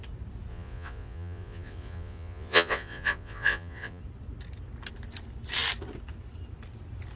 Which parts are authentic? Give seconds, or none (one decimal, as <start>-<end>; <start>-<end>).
0.0-0.5; 4.0-7.2